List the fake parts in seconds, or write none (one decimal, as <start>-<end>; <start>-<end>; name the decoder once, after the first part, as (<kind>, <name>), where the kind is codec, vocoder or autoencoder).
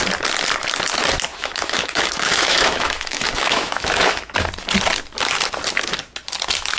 1.3-4.3 (autoencoder, DAC-VAE)